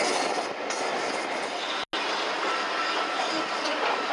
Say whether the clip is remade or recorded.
recorded